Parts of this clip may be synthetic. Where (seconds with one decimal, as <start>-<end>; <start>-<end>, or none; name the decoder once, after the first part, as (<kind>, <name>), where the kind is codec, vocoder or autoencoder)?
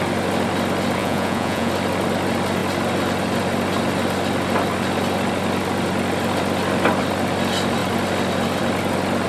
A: 1.0-1.7 (vocoder, Vocos)